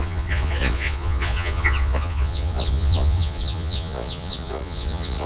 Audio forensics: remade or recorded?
remade